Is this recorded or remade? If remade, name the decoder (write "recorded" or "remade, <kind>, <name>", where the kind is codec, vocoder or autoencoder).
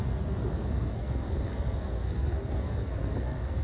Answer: remade, codec, SNAC